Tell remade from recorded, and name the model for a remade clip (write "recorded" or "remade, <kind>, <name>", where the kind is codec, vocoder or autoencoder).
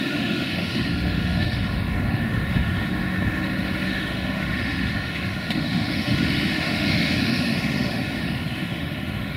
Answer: remade, autoencoder, DAC-VAE